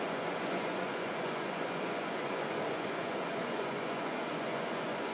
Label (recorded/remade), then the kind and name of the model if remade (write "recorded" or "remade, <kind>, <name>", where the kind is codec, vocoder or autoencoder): remade, vocoder, Vocos